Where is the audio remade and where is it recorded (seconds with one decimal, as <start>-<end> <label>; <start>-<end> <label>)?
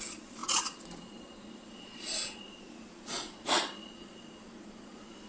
0.0-5.3 remade